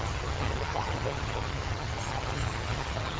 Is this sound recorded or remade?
remade